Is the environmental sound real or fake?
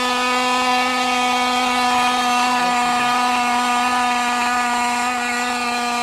real